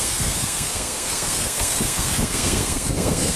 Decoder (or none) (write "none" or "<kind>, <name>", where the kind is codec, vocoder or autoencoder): codec, SNAC